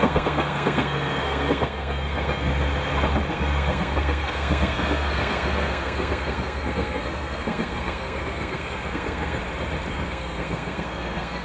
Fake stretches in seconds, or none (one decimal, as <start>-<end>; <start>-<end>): 0.0-2.5; 3.3-9.4; 9.9-11.4